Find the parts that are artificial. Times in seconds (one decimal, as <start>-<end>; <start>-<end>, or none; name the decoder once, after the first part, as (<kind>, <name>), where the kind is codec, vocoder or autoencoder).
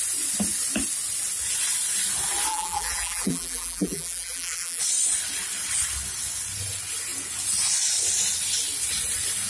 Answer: 2.5-4.8 (vocoder, BigVGAN v2)